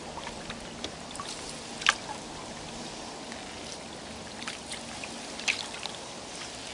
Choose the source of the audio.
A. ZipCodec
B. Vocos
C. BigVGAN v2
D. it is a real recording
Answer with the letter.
D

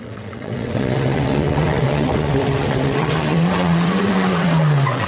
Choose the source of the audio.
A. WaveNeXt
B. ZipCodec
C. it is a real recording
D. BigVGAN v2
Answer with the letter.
A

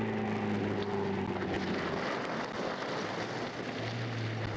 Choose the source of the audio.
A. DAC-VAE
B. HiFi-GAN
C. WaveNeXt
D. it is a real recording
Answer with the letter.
D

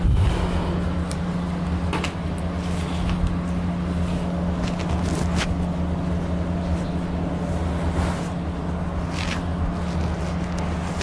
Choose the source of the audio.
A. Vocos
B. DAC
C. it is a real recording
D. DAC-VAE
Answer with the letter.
C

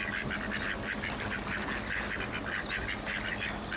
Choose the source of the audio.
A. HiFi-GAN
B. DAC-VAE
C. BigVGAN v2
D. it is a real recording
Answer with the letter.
D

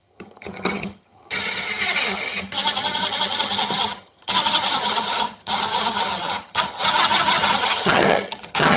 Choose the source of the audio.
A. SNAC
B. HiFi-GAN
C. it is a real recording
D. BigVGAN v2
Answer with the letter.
B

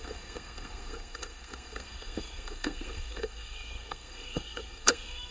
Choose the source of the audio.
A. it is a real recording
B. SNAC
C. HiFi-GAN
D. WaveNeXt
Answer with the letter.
B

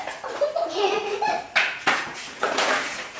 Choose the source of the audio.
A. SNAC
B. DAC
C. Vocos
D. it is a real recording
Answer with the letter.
C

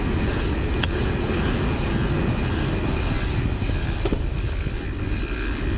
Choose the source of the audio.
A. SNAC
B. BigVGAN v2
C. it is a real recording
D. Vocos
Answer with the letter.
C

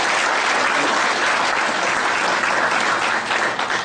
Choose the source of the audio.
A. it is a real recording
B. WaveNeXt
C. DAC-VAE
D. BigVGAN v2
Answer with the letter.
A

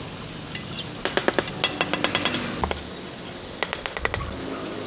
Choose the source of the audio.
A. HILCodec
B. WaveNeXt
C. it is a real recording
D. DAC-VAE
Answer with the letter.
C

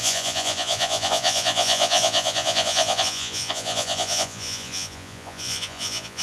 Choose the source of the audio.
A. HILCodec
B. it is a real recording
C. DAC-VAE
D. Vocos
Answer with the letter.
D